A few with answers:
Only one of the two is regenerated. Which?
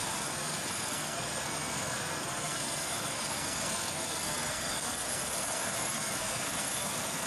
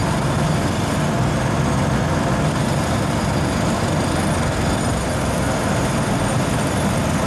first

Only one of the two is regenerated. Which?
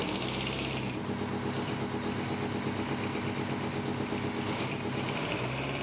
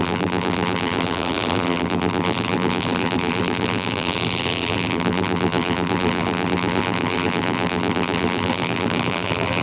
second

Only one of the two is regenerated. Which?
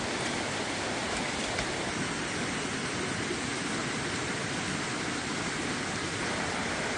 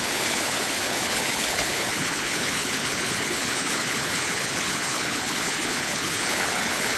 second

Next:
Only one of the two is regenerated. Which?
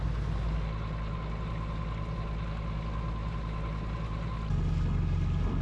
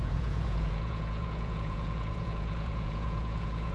second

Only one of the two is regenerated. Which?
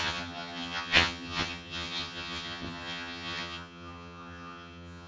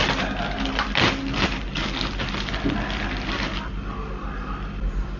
first